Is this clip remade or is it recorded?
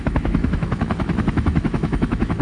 remade